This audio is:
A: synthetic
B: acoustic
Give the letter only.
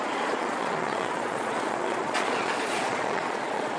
A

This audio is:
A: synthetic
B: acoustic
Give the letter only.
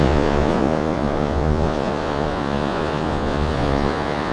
A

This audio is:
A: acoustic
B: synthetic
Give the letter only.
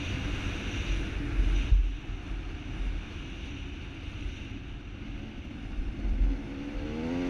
A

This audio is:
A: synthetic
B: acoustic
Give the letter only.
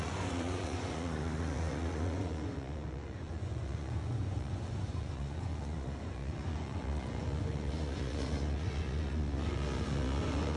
A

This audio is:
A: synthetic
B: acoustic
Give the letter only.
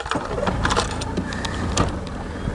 B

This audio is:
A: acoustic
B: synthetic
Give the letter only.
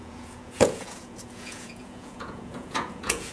B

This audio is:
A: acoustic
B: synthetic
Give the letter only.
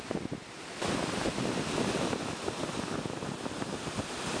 A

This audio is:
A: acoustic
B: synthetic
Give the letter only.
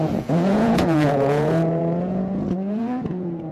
B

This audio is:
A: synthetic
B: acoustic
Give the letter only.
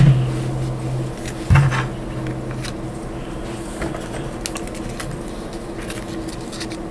B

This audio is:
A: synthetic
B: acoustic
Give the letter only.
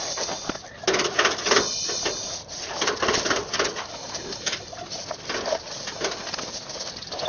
B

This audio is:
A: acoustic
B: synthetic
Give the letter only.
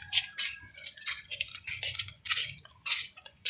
B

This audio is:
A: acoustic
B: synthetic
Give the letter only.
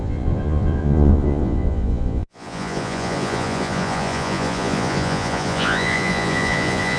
B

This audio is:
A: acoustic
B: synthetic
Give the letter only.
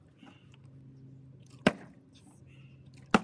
A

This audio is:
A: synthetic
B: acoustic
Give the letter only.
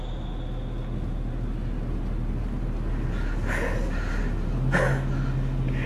B